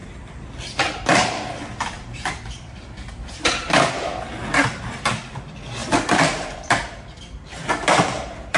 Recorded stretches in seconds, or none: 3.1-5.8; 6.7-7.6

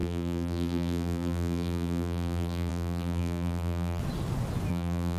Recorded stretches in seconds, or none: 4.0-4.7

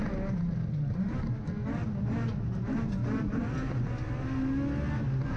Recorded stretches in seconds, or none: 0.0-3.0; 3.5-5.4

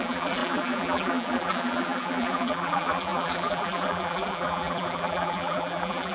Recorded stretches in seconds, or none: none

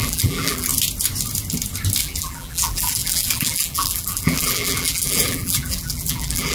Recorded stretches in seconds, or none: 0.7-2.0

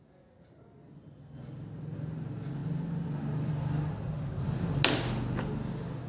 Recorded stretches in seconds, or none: 0.0-6.1

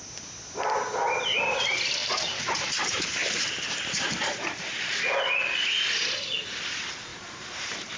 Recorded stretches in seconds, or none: 0.0-2.0; 4.9-7.1

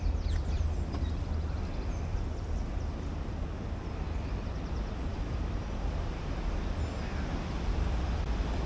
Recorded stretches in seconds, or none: 0.0-5.1; 6.5-8.7